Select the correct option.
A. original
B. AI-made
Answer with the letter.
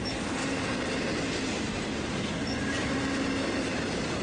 A